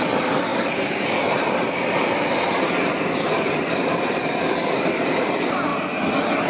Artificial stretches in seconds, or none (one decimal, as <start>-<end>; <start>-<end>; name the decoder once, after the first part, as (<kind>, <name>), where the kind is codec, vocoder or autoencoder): 0.5-1.6 (vocoder, BigVGAN v2); 2.9-4.3